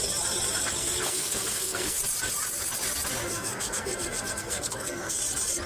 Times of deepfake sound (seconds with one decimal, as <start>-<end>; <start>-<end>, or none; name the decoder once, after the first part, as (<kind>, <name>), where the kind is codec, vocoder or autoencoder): 0.8-2.0 (codec, SNAC); 3.3-5.2